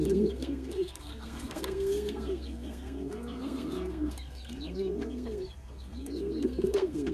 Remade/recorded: remade